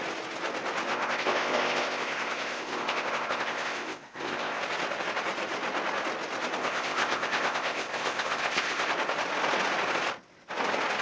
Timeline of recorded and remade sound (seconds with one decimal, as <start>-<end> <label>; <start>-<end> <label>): 0.0-0.9 recorded; 0.9-4.6 remade; 4.6-6.6 recorded; 6.6-8.9 remade; 8.9-11.0 recorded